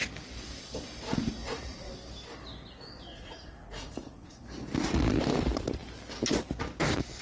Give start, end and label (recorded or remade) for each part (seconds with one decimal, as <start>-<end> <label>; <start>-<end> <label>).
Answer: 0.0-1.4 recorded; 1.4-1.9 remade; 1.9-3.1 recorded; 3.1-4.4 remade; 4.4-7.2 recorded